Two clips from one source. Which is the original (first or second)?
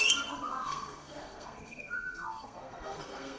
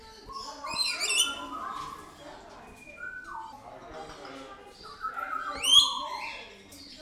second